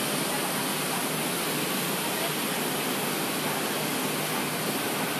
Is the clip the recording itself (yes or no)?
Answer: yes